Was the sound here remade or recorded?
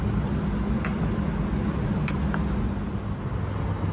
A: recorded